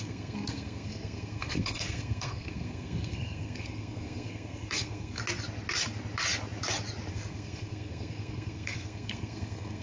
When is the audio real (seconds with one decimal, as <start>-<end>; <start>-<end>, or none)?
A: 5.2-7.1